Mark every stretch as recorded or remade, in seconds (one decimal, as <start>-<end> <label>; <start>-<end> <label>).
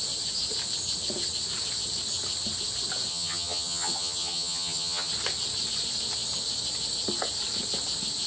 0.0-3.1 recorded; 3.1-5.1 remade; 5.1-8.3 recorded